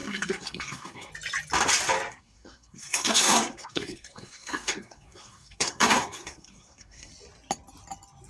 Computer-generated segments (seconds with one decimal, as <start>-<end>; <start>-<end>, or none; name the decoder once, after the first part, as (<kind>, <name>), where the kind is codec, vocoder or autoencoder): 0.0-1.1 (codec, SNAC); 2.1-7.1